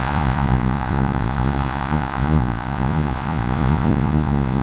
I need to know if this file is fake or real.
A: fake